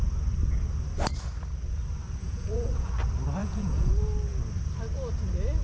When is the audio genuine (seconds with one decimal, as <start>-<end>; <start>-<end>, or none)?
0.0-2.2; 2.9-3.4; 3.9-5.6